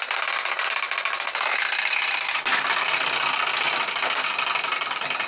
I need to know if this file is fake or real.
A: real